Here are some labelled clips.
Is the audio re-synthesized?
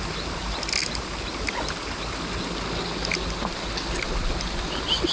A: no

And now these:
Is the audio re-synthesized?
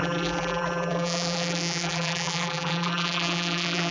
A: yes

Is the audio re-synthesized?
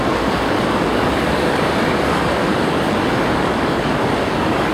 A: yes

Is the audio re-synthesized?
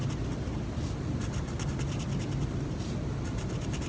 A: no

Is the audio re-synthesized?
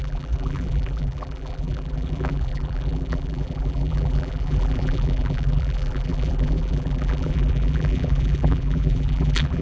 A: yes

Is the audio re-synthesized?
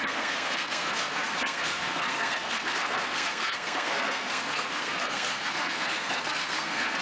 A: yes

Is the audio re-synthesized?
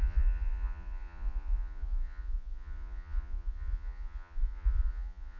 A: yes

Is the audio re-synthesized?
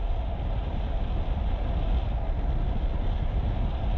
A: yes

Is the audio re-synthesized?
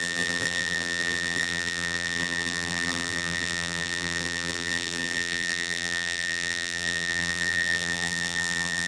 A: yes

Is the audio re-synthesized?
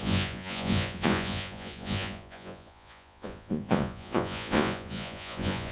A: yes